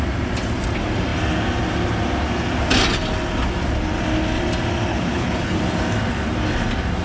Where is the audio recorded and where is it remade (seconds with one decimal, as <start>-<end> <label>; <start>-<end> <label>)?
0.0-4.9 recorded; 4.9-5.6 remade; 5.6-7.0 recorded